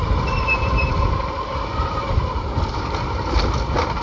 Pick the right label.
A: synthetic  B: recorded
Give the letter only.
B